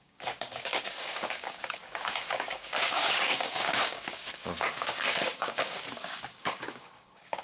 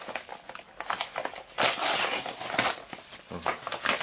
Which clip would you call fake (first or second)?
first